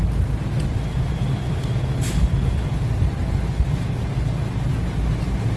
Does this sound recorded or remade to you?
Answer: recorded